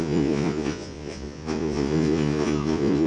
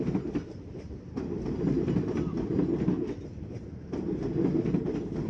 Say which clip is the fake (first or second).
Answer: first